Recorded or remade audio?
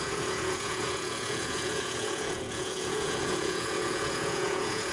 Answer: remade